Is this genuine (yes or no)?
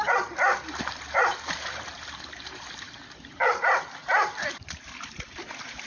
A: no